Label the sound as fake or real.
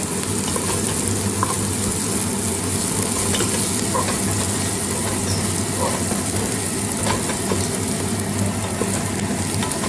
real